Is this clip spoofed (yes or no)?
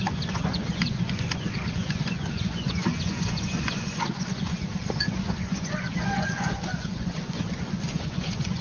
yes